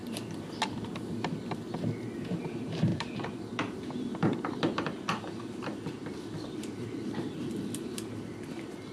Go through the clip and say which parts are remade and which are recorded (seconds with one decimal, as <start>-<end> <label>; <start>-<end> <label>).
0.0-2.3 recorded; 2.3-8.9 remade